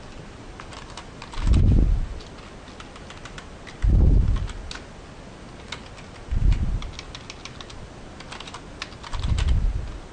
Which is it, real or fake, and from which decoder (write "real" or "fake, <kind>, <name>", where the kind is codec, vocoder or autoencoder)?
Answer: real